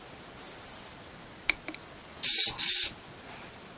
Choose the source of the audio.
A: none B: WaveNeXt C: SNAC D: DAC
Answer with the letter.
A